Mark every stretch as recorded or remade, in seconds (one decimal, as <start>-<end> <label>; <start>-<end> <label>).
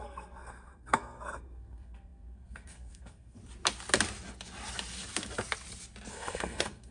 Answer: 0.0-3.4 remade; 3.4-6.1 recorded; 6.1-6.9 remade